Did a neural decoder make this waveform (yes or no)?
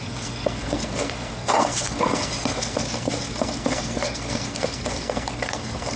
yes